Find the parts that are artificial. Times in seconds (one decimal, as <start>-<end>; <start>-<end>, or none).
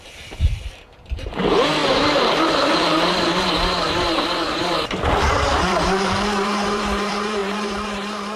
0.0-8.4